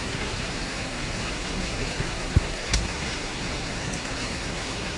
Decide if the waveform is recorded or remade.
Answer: remade